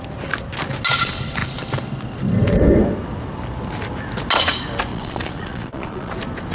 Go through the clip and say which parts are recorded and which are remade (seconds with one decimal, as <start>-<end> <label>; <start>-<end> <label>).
0.0-4.9 recorded; 4.9-6.1 remade; 6.1-6.5 recorded